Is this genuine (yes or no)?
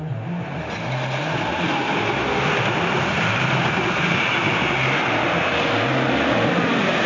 yes